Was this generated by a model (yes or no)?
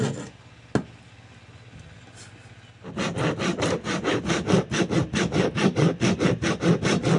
no